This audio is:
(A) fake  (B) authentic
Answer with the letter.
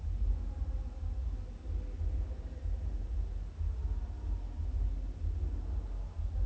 B